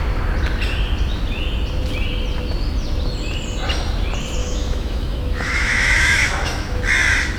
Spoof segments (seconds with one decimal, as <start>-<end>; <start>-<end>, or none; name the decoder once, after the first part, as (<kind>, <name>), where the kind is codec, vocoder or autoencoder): 4.4-6.8 (autoencoder, DAC-VAE)